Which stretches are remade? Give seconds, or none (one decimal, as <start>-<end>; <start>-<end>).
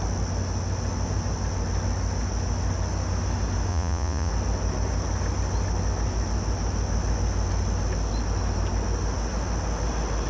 3.7-4.3